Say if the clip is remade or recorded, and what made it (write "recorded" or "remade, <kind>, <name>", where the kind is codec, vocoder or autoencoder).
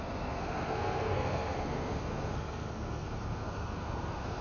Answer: remade, codec, SNAC